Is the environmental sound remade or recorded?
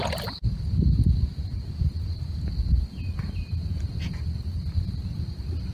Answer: recorded